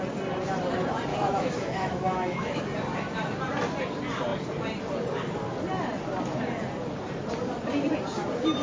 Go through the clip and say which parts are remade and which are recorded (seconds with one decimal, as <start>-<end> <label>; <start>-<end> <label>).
0.0-1.1 recorded; 1.1-2.6 remade; 2.6-8.6 recorded

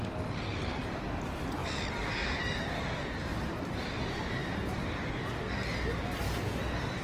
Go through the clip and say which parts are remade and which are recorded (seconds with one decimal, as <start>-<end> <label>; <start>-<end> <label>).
0.0-1.6 recorded; 1.6-2.6 remade; 2.6-3.3 recorded; 3.3-3.9 remade; 3.9-7.0 recorded

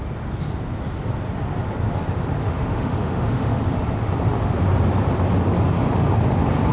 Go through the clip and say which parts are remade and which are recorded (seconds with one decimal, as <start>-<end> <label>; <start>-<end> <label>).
0.0-2.4 recorded; 2.4-3.6 remade; 3.6-6.7 recorded

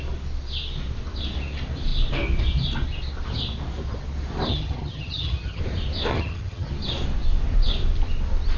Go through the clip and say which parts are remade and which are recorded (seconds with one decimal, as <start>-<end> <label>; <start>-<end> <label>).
0.0-4.5 recorded; 4.5-5.6 remade; 5.6-6.1 recorded; 6.1-6.7 remade; 6.7-8.6 recorded

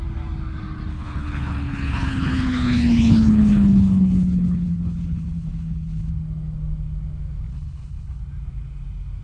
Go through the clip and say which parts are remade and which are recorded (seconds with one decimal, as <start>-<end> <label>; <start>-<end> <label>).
0.0-0.9 recorded; 0.9-6.1 remade; 6.1-7.5 recorded; 7.5-8.2 remade; 8.2-9.2 recorded

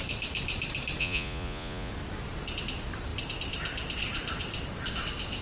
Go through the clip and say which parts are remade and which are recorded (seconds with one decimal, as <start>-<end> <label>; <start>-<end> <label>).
0.0-1.0 recorded; 1.0-1.9 remade; 1.9-5.4 recorded